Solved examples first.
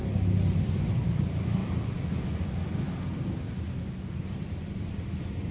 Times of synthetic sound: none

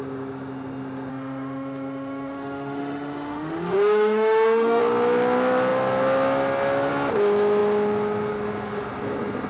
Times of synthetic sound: 1.1-4.8 (autoencoder, DAC-VAE)

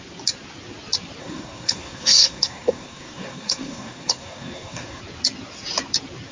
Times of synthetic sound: 1.2-5.0 (codec, SNAC)

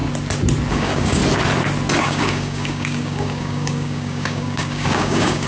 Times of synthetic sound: 0.7-1.2 (codec, DAC); 2.0-5.5

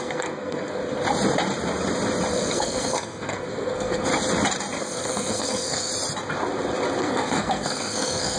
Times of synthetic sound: 0.0-0.8 (codec, SNAC); 2.3-4.1; 4.8-5.9; 7.0-8.4

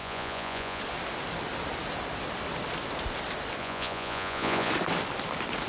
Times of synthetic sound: 0.0-0.8 (vocoder, Vocos); 3.6-4.7

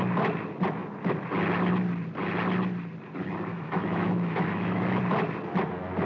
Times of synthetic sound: 3.5-5.0 (autoencoder, DAC-VAE)